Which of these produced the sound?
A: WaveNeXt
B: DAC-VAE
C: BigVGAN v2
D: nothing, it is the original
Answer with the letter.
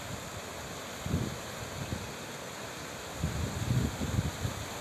D